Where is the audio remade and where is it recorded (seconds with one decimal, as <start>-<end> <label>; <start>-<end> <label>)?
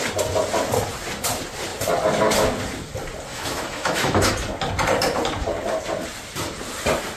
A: 0.0-3.3 recorded; 3.3-4.3 remade; 4.3-7.2 recorded